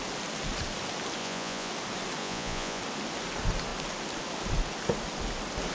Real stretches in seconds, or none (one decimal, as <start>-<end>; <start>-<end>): 0.0-1.2; 1.7-2.2; 2.8-5.7